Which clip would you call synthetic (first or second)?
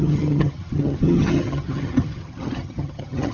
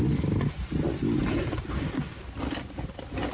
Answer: first